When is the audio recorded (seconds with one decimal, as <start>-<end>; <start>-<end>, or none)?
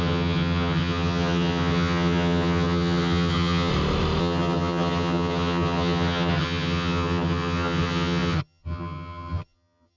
3.7-4.2